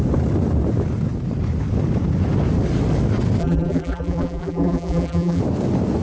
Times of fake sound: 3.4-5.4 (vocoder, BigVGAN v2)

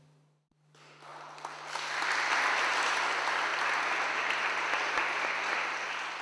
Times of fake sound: none